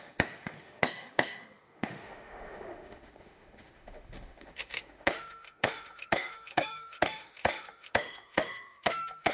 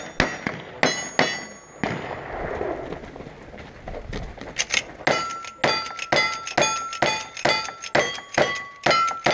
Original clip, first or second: second